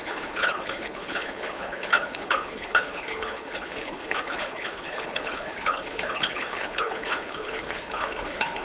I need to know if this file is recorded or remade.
remade